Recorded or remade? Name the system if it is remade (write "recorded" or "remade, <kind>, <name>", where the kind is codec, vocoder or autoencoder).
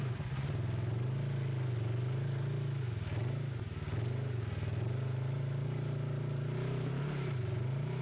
recorded